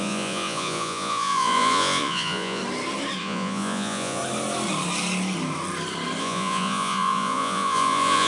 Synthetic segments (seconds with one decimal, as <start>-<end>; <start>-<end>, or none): 0.0-2.6; 3.2-4.2; 6.2-8.3